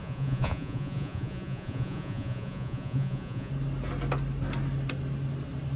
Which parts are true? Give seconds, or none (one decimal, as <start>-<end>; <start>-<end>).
3.5-5.8